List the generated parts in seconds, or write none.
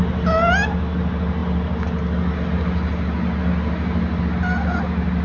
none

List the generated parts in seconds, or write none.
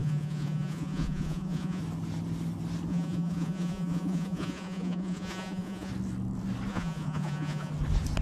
0.0-1.8 (vocoder, Vocos); 2.9-5.9; 6.7-7.7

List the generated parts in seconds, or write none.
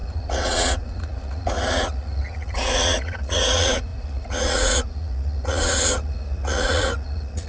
0.0-7.5 (vocoder, Vocos)